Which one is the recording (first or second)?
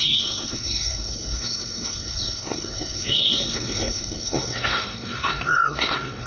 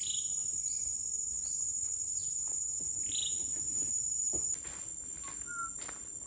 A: second